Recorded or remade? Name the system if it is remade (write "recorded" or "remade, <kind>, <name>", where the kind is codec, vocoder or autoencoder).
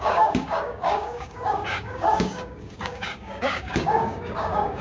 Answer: remade, codec, DAC